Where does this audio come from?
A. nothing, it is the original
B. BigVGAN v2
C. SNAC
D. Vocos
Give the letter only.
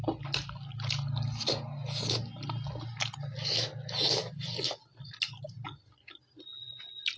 A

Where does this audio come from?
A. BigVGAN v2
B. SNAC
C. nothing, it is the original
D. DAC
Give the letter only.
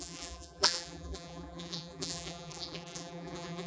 A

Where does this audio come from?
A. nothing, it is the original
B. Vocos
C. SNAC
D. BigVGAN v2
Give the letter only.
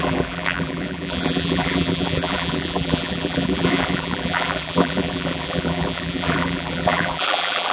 D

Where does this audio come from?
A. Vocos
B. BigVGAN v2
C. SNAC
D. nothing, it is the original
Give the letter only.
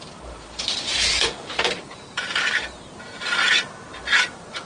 B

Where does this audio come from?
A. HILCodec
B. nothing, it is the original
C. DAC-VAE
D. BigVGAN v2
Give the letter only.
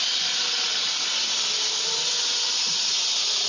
B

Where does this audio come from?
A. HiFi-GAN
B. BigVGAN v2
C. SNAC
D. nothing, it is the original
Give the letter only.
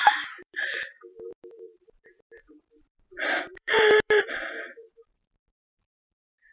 B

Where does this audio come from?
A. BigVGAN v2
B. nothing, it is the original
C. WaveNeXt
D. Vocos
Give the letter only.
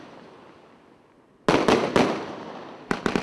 B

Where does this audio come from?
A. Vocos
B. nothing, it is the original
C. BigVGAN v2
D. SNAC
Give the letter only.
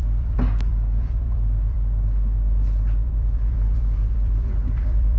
C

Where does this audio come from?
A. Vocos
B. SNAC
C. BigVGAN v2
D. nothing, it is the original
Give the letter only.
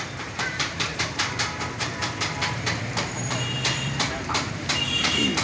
C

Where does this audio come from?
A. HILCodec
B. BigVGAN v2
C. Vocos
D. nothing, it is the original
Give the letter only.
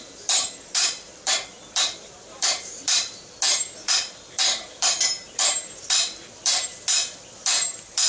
B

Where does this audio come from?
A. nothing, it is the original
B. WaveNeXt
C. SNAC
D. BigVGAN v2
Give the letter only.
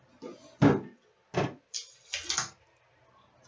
A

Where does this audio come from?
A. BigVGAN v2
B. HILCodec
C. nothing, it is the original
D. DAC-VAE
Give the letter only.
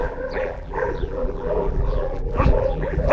A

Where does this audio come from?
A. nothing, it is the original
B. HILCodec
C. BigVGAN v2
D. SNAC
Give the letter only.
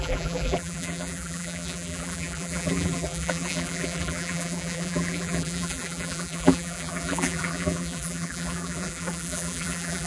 C